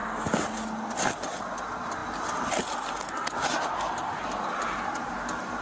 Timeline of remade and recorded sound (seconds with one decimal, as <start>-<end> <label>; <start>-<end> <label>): 0.0-5.6 recorded